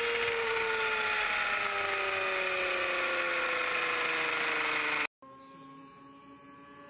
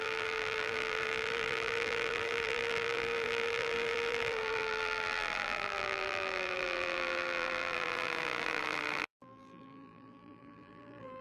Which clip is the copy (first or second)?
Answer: second